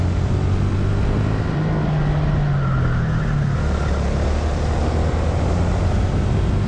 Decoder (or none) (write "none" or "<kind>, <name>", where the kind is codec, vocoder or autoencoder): none